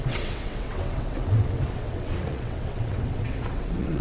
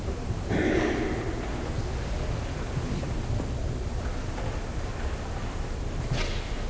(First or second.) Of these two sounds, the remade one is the first